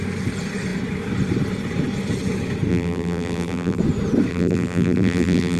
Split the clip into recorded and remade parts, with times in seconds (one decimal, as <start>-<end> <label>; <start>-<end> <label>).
0.0-2.7 recorded; 2.7-3.8 remade; 3.8-4.3 recorded; 4.3-5.6 remade